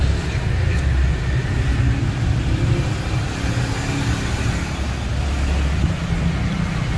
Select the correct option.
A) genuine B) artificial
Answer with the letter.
A